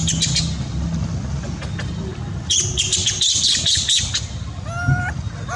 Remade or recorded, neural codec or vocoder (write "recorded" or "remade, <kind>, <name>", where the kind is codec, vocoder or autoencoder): recorded